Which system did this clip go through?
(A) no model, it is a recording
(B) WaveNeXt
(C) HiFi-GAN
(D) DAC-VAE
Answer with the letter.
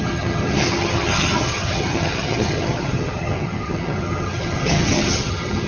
C